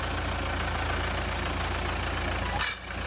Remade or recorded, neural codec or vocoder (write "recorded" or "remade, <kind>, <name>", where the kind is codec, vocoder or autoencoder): recorded